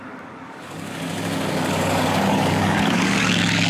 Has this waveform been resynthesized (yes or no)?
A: yes